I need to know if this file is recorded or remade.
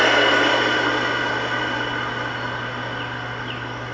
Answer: recorded